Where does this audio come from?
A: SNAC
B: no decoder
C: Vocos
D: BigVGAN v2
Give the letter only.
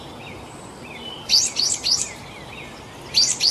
D